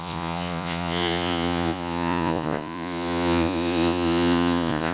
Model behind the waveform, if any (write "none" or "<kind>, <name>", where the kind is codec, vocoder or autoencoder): vocoder, Vocos